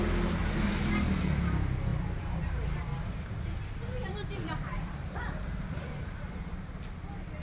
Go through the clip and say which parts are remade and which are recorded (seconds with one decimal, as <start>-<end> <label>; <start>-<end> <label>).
0.0-0.4 recorded; 0.4-0.9 remade; 0.9-1.9 recorded; 1.9-3.0 remade; 3.0-3.9 recorded; 3.9-6.7 remade; 6.7-7.4 recorded